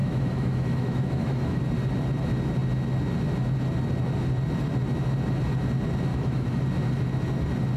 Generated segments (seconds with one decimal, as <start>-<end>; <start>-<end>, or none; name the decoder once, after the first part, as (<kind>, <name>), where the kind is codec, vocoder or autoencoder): 0.0-1.6 (autoencoder, DAC-VAE); 6.1-6.6